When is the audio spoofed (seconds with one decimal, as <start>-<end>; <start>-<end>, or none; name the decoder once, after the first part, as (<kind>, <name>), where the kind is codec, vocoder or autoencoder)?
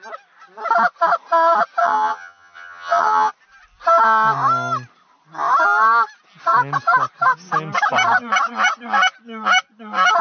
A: 1.8-3.3 (vocoder, HiFi-GAN)